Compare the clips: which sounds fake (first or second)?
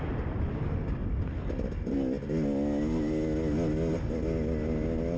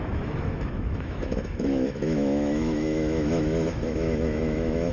second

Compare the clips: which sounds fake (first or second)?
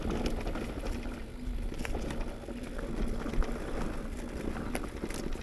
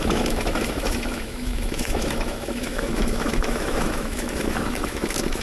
second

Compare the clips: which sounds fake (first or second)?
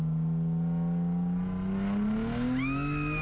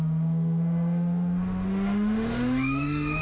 second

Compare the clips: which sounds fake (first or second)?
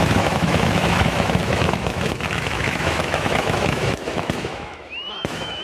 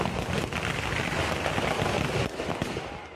first